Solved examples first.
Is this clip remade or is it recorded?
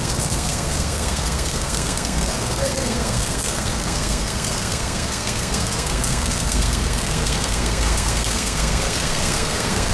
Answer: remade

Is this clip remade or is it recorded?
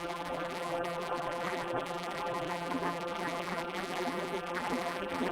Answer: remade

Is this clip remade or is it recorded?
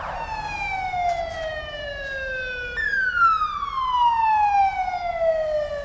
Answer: recorded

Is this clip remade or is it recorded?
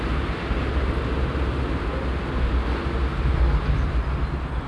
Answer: recorded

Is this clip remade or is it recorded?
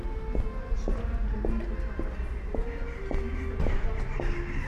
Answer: recorded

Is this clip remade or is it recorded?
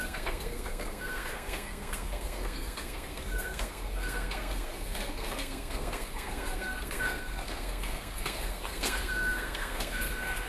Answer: remade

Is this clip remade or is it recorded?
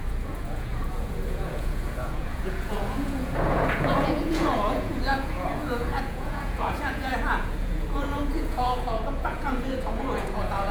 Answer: remade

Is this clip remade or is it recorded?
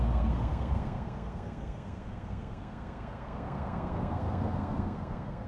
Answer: remade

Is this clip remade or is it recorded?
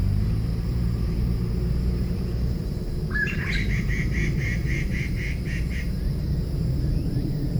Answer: remade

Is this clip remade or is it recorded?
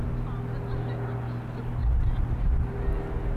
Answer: recorded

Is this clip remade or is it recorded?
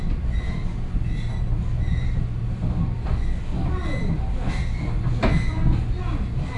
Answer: recorded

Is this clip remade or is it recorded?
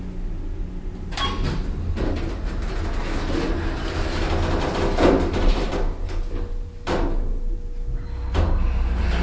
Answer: recorded